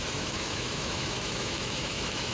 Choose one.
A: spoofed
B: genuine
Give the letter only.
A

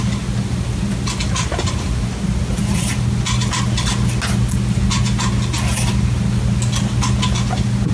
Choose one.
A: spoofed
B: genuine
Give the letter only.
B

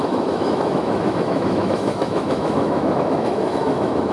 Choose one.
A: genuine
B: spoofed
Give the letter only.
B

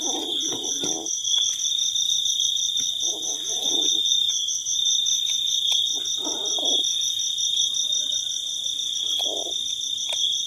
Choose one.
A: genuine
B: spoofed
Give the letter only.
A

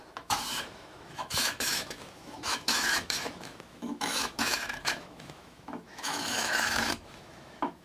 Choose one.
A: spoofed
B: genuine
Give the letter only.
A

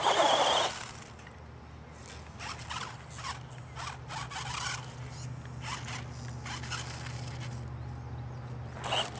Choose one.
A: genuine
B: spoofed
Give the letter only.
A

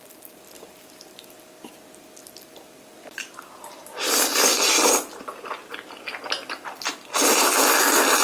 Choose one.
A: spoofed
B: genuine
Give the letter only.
B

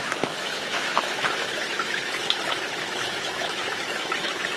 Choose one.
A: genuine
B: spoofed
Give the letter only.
B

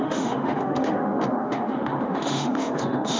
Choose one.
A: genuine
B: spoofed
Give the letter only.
B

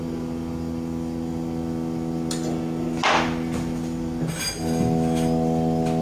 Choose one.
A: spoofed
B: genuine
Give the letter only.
B